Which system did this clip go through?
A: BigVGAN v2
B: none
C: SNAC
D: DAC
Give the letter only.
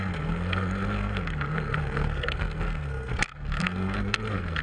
C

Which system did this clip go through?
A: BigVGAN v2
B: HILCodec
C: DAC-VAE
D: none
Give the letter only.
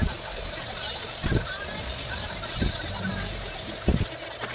D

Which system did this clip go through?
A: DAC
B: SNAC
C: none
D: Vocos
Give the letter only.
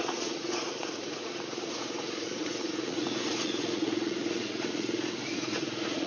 D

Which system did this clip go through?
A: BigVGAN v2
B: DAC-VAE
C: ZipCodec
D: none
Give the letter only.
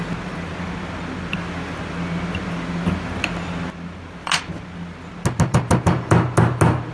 D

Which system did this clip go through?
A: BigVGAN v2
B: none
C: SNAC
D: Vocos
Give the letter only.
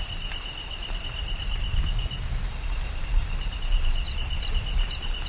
B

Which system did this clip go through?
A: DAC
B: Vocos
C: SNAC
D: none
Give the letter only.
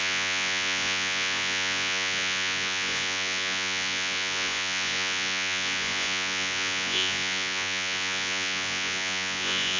B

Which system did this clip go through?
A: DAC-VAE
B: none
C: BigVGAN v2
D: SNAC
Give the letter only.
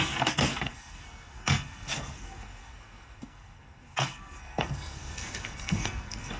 D